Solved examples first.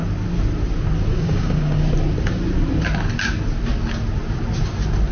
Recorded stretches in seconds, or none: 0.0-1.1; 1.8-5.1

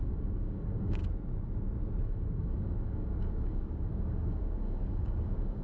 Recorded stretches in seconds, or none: 1.0-2.0